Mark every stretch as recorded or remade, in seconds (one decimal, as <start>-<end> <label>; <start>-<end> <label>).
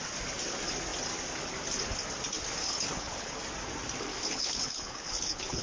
0.0-2.6 recorded; 2.6-3.3 remade; 3.3-4.1 recorded; 4.1-5.6 remade